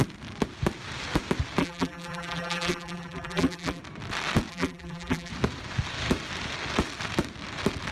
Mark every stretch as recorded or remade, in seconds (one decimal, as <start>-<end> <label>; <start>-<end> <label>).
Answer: 0.0-1.6 recorded; 1.6-3.8 remade; 3.8-4.5 recorded; 4.5-5.3 remade; 5.3-7.9 recorded